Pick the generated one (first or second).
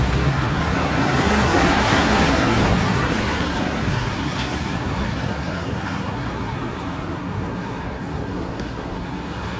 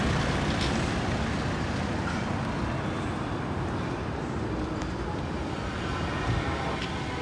first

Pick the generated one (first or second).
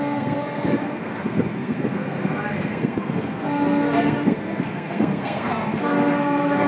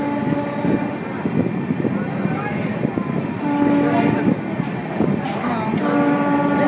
first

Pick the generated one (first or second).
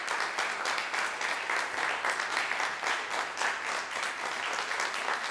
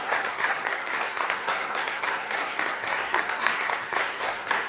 second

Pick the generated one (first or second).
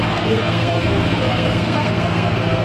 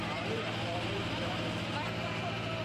first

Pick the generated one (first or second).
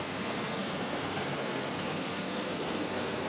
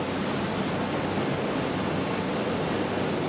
first